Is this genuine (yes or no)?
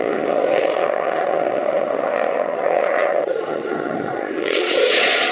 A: no